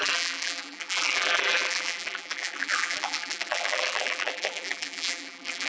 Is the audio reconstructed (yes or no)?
yes